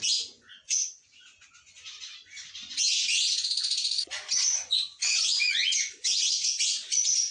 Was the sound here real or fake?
fake